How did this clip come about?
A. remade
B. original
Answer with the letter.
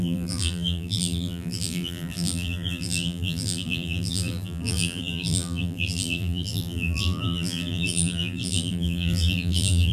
A